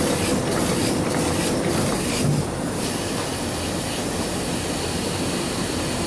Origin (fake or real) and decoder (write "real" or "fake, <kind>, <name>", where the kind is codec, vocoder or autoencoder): real